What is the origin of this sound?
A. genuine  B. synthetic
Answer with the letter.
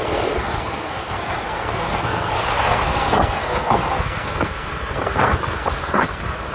B